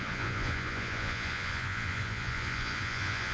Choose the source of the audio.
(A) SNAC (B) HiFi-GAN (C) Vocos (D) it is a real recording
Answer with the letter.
C